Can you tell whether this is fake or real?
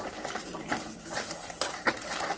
fake